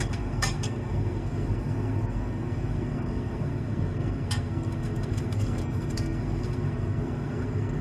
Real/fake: fake